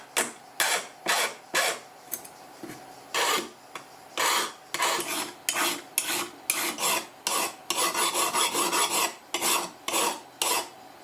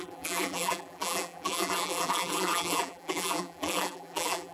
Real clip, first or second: first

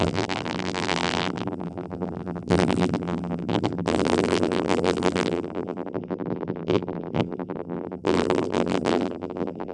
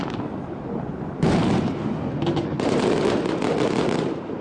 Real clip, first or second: second